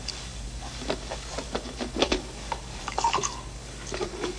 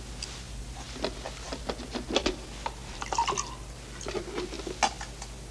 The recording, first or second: second